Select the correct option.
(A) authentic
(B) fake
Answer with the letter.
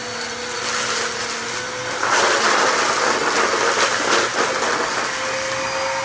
A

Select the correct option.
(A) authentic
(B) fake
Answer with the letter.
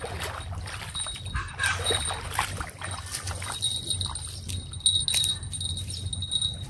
A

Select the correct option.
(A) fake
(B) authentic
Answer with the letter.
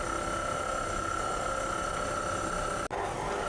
B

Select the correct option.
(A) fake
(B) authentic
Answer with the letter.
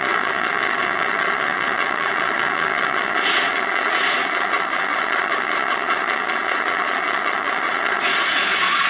A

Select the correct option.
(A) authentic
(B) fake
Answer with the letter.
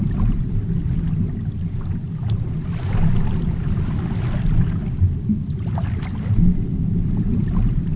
A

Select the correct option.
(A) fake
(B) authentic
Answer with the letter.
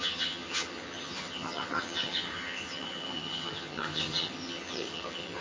A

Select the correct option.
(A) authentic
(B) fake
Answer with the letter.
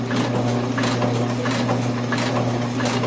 A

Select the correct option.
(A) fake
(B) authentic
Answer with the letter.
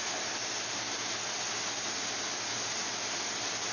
B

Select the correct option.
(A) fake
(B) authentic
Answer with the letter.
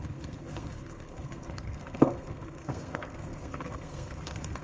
A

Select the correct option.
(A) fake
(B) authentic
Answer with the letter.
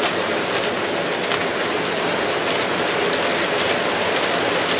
B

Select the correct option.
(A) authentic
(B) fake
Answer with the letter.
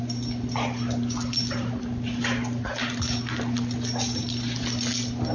A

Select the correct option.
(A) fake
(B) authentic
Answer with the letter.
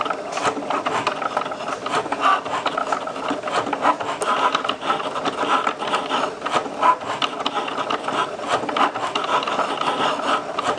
B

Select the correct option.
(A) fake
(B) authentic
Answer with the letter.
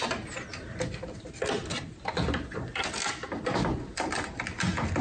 B